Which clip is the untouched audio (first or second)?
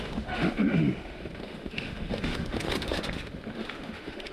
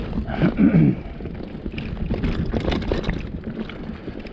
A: second